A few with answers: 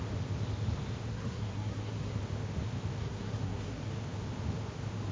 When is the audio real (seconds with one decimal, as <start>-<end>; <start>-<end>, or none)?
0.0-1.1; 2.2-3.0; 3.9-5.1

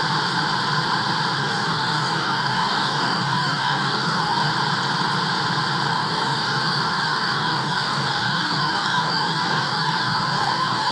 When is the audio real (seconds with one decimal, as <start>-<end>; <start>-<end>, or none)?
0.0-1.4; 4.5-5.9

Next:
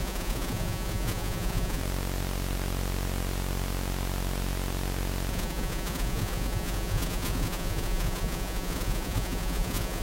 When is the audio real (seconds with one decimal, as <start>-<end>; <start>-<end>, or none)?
1.8-5.3

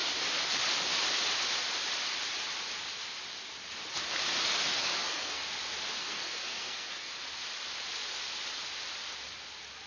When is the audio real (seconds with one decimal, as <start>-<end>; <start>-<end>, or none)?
0.0-4.7; 5.4-6.0; 7.1-9.9